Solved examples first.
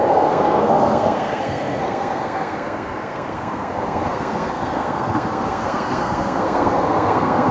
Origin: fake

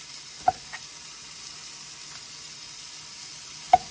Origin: real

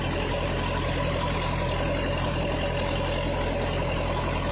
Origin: real